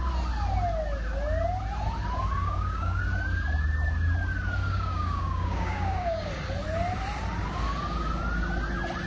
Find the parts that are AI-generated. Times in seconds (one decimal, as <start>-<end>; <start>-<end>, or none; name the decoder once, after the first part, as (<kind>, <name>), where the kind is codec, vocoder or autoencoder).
2.4-3.0 (codec, DAC); 4.6-6.3